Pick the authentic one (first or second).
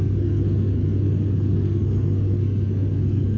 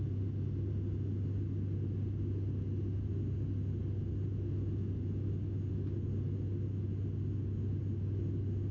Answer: second